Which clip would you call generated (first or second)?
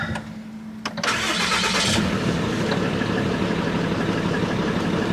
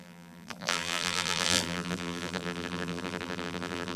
second